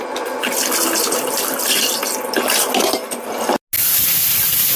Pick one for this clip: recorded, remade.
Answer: recorded